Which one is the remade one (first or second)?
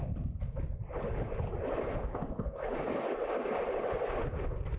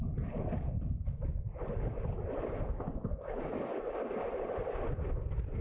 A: second